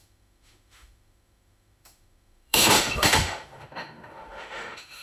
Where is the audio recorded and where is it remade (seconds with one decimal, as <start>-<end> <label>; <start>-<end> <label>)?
0.0-5.0 remade